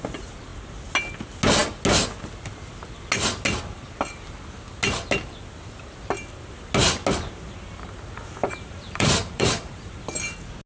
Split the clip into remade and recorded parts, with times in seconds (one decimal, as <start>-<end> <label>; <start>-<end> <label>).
0.0-8.4 recorded; 8.4-9.7 remade; 9.7-10.7 recorded

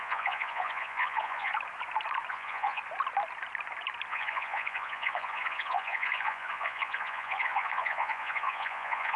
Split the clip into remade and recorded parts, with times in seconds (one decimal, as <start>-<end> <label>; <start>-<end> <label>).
0.0-1.5 remade; 1.5-2.3 recorded; 2.3-2.8 remade; 2.8-4.1 recorded; 4.1-9.2 remade

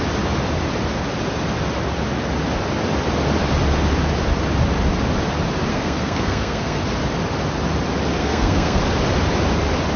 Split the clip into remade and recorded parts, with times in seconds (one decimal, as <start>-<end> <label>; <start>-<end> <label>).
0.0-5.7 recorded; 5.7-6.8 remade; 6.8-8.2 recorded; 8.2-8.8 remade; 8.8-10.0 recorded

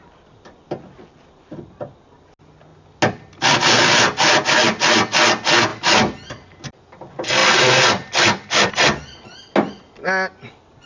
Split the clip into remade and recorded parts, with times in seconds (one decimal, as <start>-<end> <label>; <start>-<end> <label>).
0.0-10.9 recorded

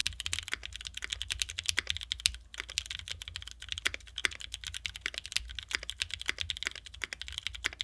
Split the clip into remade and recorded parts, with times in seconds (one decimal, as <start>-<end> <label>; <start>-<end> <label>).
0.0-7.8 recorded

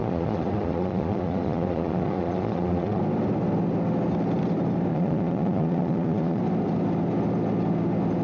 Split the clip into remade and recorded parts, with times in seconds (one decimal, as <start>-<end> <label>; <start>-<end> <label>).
0.0-3.0 remade; 3.0-4.9 recorded; 4.9-6.4 remade; 6.4-8.2 recorded